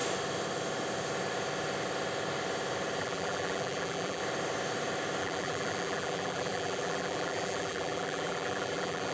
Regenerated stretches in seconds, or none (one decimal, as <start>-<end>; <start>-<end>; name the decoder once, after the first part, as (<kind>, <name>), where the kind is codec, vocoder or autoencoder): 3.0-4.2 (vocoder, BigVGAN v2); 5.2-9.1